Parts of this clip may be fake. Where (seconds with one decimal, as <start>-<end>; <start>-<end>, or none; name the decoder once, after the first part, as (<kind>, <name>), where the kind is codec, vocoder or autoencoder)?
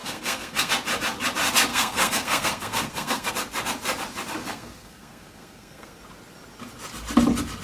0.0-0.7 (codec, SNAC); 1.7-3.3; 4.4-6.0